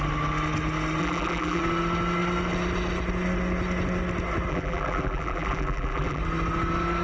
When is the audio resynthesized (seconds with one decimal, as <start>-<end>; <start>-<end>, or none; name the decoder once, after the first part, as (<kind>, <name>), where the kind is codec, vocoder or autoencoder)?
1.0-1.6 (vocoder, BigVGAN v2); 4.5-6.2